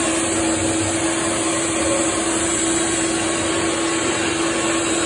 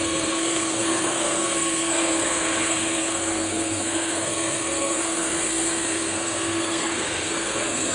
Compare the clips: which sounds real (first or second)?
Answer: first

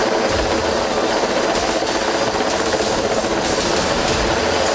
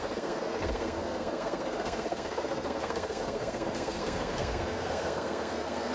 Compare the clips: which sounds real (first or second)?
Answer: first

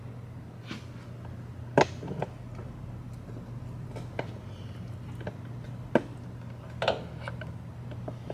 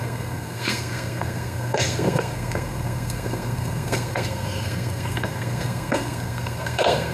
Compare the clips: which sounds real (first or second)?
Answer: first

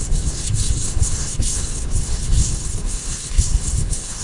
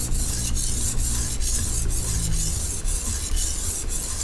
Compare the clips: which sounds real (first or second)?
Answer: second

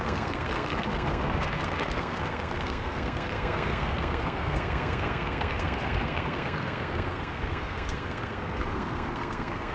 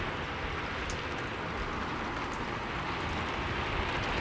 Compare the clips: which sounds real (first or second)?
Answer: second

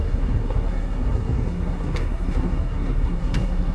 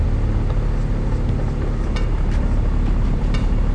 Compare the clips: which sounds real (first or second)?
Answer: second